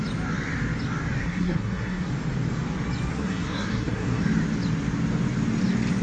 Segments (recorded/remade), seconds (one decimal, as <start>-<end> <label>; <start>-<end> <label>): 0.0-1.2 recorded; 1.2-2.1 remade; 2.1-3.1 recorded; 3.1-4.2 remade; 4.2-6.0 recorded